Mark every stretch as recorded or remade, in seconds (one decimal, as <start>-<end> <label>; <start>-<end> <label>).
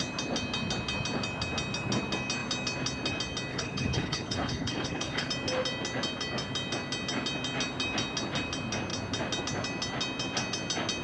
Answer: 0.0-3.5 recorded; 3.5-5.3 remade; 5.3-11.0 recorded